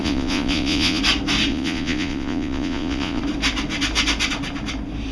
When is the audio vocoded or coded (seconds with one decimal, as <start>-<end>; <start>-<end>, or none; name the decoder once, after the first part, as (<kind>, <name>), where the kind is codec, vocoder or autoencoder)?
0.0-1.0 (vocoder, Vocos); 1.5-3.2